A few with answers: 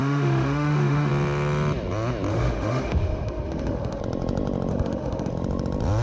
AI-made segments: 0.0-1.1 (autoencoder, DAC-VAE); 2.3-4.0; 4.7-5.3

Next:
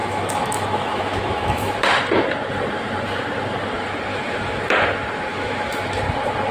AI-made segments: 0.0-1.8 (autoencoder, DAC-VAE); 4.1-4.6; 5.3-6.0

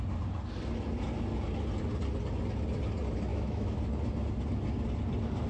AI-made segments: 3.3-3.8 (autoencoder, DAC-VAE)

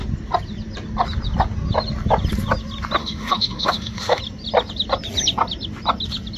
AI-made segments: 3.0-4.2 (autoencoder, DAC-VAE)

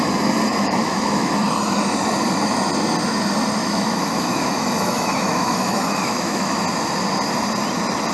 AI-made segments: 0.5-1.3 (autoencoder, DAC-VAE); 3.6-6.6